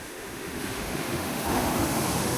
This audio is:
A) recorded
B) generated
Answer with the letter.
B